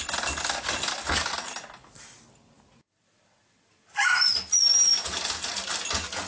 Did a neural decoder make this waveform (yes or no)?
no